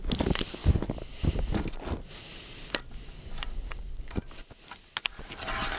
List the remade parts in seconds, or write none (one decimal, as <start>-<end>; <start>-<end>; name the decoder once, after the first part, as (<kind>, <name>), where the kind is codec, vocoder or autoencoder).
none